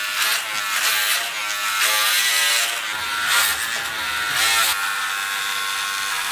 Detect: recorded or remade recorded